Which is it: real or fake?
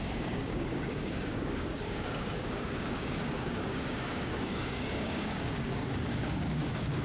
fake